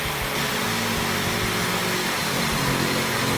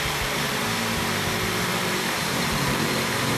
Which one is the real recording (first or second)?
first